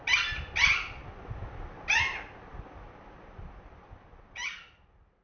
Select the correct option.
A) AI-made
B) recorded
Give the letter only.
B